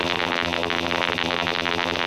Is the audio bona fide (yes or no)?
no